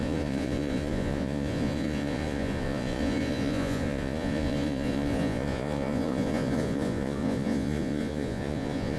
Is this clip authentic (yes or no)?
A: no